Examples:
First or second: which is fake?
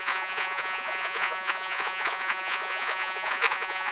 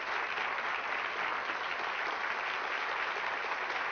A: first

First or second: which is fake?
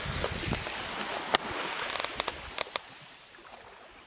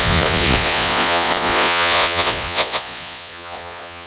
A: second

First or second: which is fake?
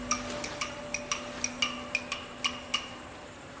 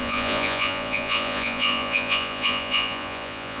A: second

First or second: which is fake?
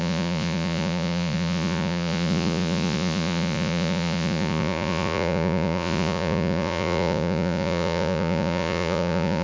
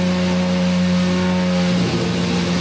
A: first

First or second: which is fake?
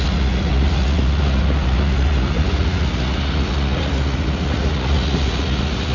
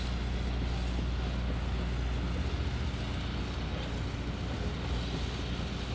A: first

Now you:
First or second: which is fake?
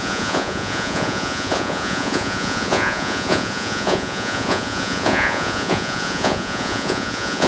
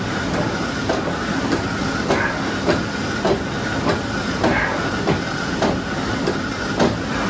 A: first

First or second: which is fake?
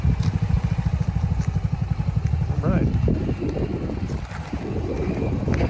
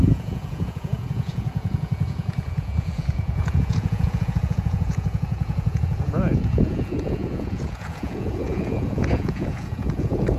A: second